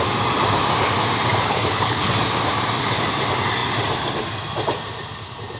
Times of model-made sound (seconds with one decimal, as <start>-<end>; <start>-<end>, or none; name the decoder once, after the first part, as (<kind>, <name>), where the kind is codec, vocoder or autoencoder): 1.4-2.1 (codec, HILCodec)